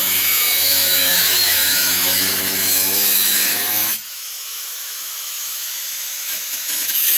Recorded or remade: remade